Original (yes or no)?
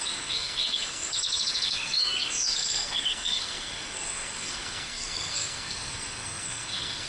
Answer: no